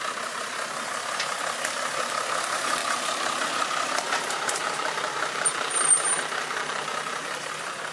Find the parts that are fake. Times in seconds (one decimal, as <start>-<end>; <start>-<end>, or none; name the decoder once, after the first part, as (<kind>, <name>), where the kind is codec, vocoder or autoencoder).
2.8-3.3 (vocoder, BigVGAN v2); 4.6-7.5